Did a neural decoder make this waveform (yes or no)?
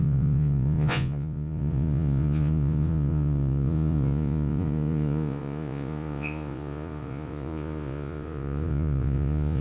yes